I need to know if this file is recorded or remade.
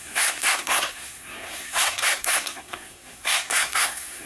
remade